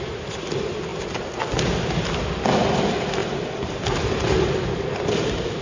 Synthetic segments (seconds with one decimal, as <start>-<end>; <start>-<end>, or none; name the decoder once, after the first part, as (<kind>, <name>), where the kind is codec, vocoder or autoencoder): 0.9-2.2 (vocoder, BigVGAN v2); 3.2-4.1